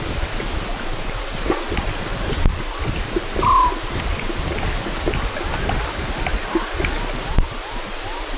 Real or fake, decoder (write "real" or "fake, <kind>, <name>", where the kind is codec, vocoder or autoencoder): real